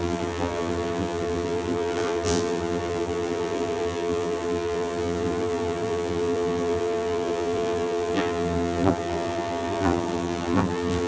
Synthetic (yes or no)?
yes